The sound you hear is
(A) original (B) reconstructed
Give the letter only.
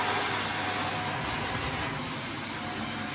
A